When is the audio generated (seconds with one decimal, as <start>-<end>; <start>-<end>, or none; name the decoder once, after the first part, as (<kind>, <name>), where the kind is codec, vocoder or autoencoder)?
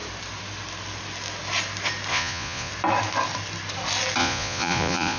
2.1-2.7 (vocoder, Vocos); 4.2-5.2